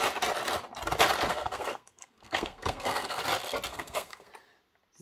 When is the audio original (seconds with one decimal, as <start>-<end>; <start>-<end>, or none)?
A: 0.0-1.3; 3.2-3.7; 4.3-5.0